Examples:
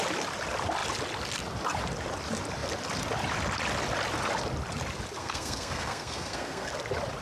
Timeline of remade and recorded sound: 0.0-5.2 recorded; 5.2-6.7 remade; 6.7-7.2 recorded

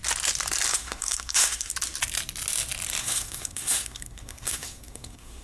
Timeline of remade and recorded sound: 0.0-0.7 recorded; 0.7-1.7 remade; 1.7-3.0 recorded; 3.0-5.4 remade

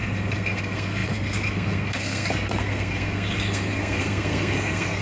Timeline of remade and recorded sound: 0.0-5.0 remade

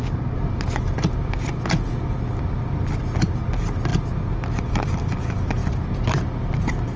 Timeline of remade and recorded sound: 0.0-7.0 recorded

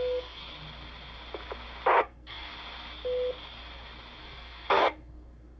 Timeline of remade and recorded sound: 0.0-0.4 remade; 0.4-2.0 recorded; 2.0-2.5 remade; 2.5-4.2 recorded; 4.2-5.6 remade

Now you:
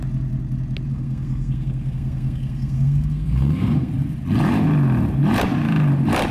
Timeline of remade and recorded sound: 0.0-0.9 recorded; 0.9-3.9 remade; 3.9-6.3 recorded

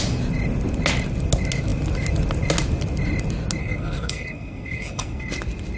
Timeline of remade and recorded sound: 0.0-3.6 recorded; 3.6-5.3 remade; 5.3-5.8 recorded

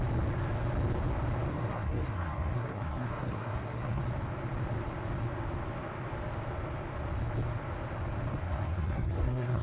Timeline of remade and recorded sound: 0.0-1.5 recorded; 1.5-4.0 remade; 4.0-8.4 recorded; 8.4-9.6 remade